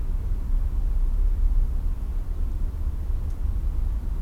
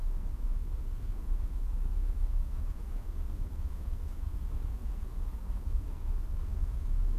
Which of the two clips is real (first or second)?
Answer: first